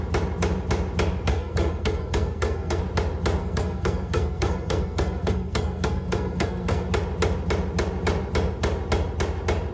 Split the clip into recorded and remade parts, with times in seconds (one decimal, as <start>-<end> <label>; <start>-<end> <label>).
0.0-1.3 recorded; 1.3-2.8 remade; 2.8-3.4 recorded; 3.4-6.9 remade; 6.9-9.7 recorded